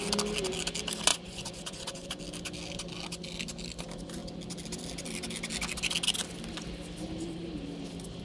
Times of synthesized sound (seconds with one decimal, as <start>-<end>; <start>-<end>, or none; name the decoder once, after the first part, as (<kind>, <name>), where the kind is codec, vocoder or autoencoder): 1.1-2.2 (vocoder, Vocos)